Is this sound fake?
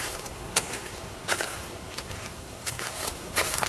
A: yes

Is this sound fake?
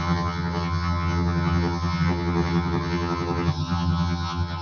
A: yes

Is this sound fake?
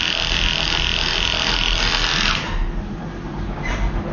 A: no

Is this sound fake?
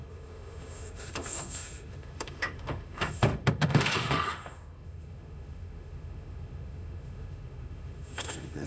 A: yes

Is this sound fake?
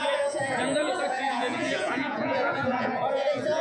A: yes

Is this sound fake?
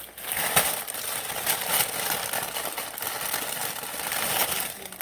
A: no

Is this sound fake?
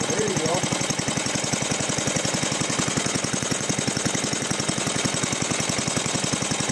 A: yes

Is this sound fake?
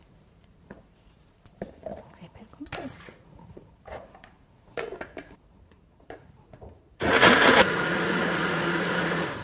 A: yes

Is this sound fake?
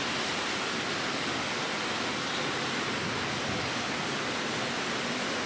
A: no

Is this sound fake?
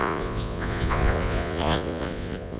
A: yes